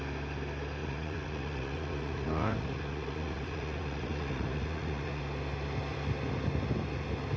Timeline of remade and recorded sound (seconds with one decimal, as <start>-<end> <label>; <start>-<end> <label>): 0.0-0.8 recorded; 0.8-5.2 remade; 5.2-7.4 recorded